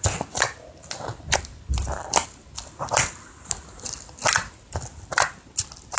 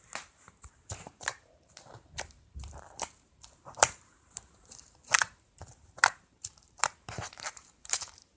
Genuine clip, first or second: first